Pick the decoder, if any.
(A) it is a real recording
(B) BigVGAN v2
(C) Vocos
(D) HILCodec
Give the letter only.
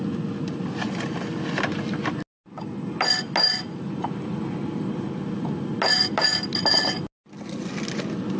A